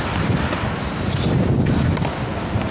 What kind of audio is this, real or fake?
real